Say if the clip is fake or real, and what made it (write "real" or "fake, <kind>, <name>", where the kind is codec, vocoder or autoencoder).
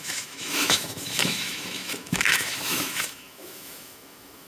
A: fake, autoencoder, DAC-VAE